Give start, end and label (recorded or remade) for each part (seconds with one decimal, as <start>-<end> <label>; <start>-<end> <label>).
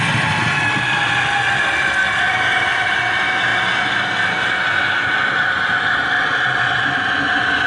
0.0-7.7 recorded